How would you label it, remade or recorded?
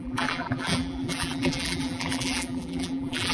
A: remade